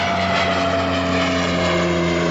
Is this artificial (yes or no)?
no